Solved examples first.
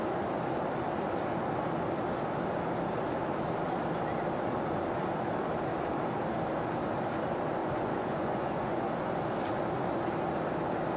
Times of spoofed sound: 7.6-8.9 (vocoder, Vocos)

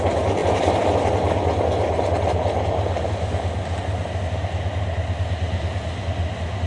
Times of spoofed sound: none

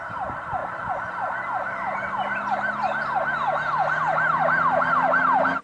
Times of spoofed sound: none